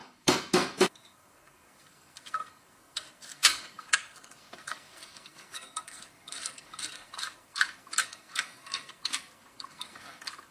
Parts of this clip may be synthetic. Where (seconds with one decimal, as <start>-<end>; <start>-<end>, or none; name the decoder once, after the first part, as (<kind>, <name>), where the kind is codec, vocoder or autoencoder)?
0.0-10.5 (codec, SNAC)